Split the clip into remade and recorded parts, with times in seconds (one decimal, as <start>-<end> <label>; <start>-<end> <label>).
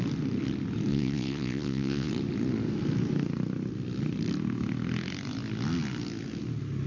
0.0-0.9 recorded; 0.9-2.1 remade; 2.1-6.9 recorded